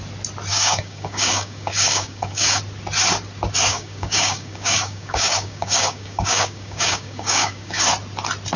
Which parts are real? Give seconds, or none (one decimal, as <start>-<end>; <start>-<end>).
0.0-0.5; 2.6-3.7; 7.9-8.6